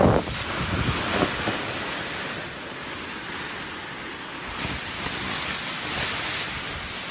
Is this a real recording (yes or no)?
yes